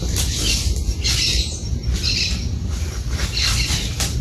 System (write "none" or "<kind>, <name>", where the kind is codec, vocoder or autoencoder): none